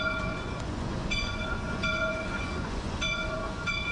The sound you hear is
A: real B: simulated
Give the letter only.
B